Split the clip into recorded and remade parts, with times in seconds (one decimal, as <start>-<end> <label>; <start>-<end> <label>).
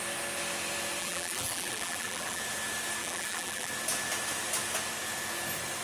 0.0-1.0 recorded; 1.0-2.4 remade; 2.4-3.0 recorded; 3.0-3.7 remade; 3.7-5.8 recorded